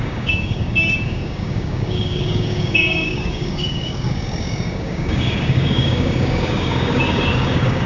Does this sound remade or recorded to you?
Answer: remade